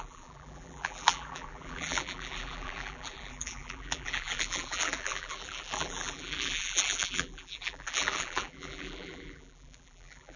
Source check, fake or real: fake